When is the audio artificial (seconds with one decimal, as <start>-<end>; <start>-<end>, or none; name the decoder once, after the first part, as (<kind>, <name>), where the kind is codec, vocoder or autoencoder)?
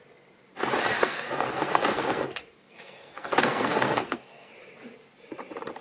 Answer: 1.0-4.5 (codec, SNAC)